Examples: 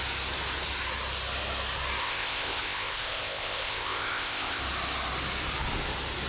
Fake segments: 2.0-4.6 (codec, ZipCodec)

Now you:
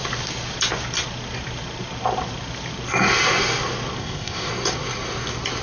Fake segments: 4.0-4.5 (codec, ZipCodec)

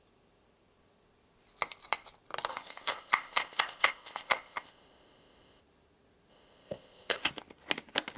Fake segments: 2.5-5.6 (codec, ZipCodec); 6.3-7.3

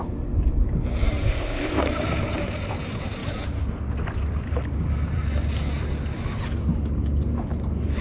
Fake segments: 1.2-1.8 (codec, ZipCodec)